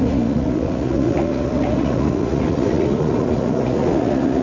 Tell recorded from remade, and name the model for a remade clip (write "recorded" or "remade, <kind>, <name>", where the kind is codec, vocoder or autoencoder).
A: remade, vocoder, Vocos